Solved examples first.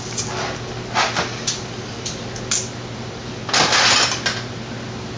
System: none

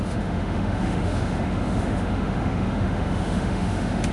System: autoencoder, DAC-VAE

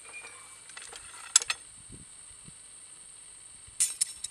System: none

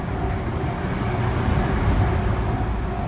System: none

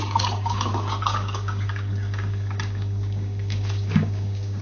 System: codec, DAC